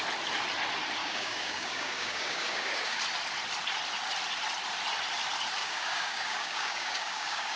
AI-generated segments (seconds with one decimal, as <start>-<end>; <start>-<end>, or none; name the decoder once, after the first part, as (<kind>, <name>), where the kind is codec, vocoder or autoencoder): 1.0-3.0 (codec, DAC); 5.6-7.6